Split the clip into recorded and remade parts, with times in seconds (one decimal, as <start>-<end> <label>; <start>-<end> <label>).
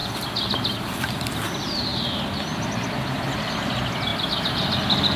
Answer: 0.0-5.2 recorded